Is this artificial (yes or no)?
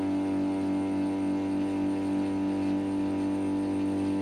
no